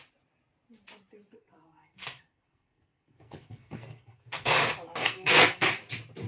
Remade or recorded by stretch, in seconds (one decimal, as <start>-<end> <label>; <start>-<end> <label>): 0.0-1.3 recorded; 1.3-4.6 remade; 4.6-5.0 recorded; 5.0-5.7 remade; 5.7-6.3 recorded

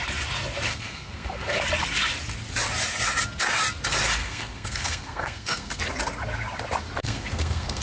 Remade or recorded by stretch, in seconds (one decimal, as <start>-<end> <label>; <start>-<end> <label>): 0.0-0.7 recorded; 0.7-1.6 remade; 1.6-4.2 recorded; 4.2-5.8 remade; 5.8-7.0 recorded; 7.0-7.8 remade

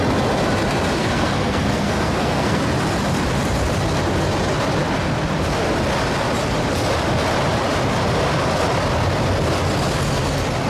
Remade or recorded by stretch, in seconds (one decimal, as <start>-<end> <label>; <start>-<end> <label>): 0.0-1.0 recorded; 1.0-2.6 remade; 2.6-10.7 recorded

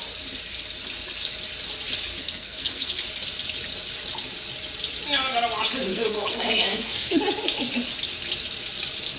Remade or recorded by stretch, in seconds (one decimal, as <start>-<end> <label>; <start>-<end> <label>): 0.0-2.2 recorded; 2.2-3.0 remade; 3.0-5.9 recorded; 5.9-7.2 remade; 7.2-9.2 recorded

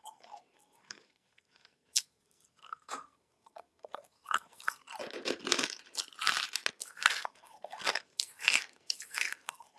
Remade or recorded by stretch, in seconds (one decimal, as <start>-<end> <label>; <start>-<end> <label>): 0.0-4.9 remade; 4.9-6.7 recorded; 6.7-9.8 remade

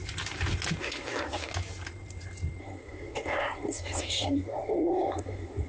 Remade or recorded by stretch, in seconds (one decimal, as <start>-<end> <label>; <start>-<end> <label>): 0.0-0.8 recorded; 0.8-1.5 remade; 1.5-2.6 recorded; 2.6-5.7 remade